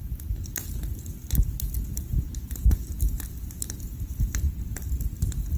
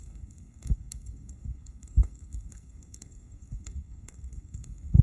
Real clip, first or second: first